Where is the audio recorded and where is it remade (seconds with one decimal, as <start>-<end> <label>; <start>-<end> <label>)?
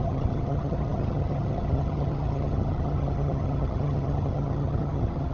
0.0-5.3 remade